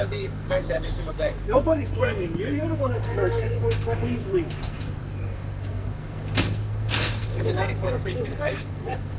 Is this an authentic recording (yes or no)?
no